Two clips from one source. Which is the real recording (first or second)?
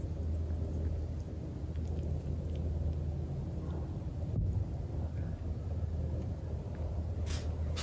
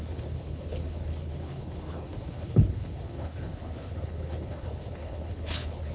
first